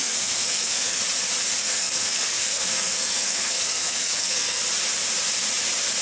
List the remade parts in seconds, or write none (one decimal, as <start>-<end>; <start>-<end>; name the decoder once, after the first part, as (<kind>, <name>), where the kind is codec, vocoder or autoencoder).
0.0-1.0 (codec, SNAC); 1.6-4.6